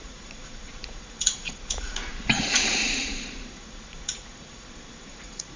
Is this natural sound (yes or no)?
no